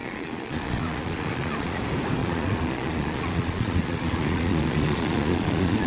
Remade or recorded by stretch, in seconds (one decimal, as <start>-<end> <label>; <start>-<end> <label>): 0.0-1.8 remade; 1.8-2.2 recorded; 2.2-5.9 remade